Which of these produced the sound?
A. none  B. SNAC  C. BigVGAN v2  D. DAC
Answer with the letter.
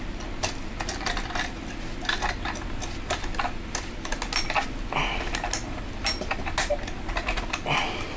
A